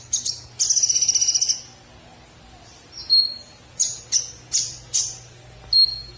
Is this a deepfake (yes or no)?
no